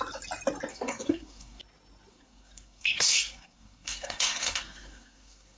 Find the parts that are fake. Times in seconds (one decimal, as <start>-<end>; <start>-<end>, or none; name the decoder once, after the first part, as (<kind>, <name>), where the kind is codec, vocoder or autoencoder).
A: 0.7-1.6 (codec, SNAC); 2.1-5.6